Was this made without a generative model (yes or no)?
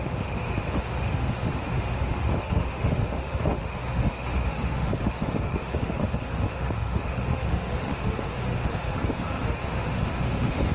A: no